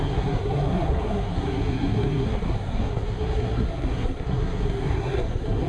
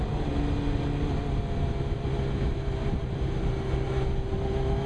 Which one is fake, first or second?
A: first